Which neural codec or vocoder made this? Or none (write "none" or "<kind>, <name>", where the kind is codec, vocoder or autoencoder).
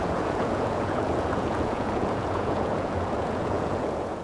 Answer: vocoder, Vocos